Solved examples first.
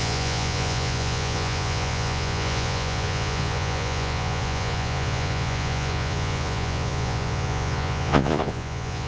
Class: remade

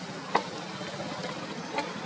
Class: recorded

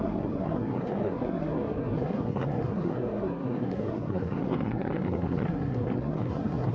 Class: remade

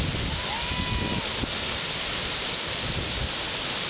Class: recorded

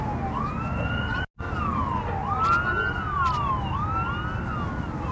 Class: recorded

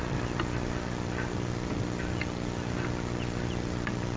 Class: recorded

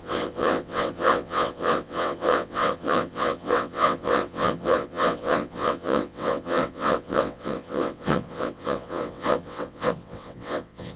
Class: remade